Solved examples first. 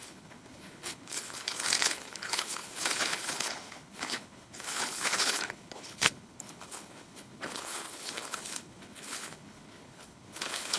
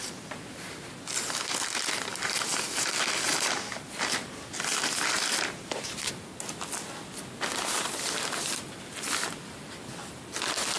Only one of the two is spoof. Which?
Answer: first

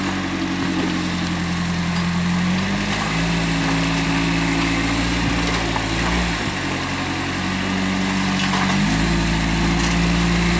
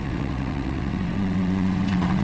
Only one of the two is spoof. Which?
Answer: second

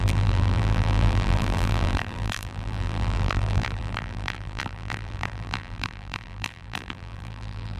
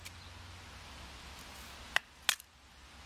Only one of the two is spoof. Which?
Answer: first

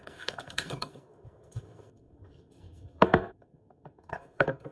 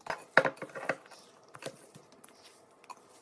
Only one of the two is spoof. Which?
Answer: first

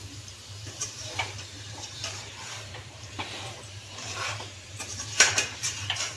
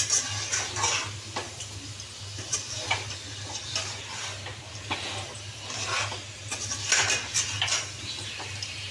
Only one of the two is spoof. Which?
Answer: first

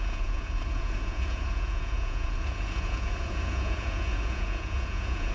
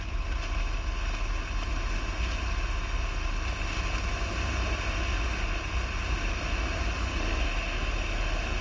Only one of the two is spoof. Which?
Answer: first